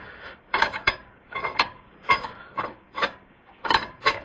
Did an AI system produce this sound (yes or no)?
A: yes